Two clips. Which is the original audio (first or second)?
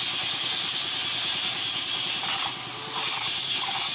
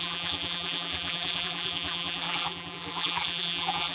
first